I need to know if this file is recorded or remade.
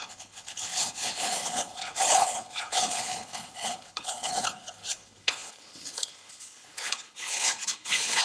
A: remade